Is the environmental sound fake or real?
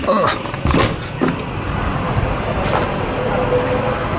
real